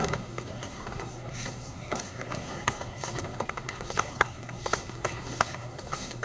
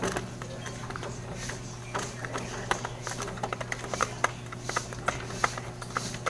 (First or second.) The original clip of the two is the second